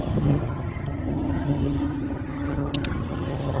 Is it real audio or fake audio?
fake